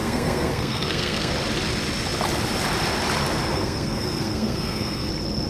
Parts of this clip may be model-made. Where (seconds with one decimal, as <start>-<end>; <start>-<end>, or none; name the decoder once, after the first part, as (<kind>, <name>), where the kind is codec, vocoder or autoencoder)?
0.0-1.3 (codec, SNAC); 3.5-5.1